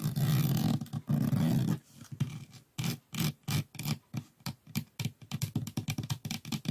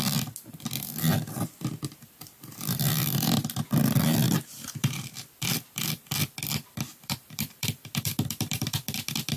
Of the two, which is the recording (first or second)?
first